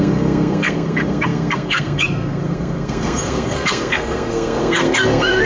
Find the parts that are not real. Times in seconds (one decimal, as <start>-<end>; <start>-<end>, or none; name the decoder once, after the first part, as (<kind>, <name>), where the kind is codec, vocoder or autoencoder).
0.0-5.5 (codec, SNAC)